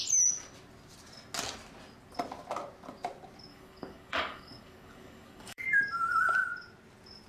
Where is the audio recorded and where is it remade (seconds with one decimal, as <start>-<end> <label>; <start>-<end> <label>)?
0.0-3.5 recorded; 3.5-5.8 remade; 5.8-7.3 recorded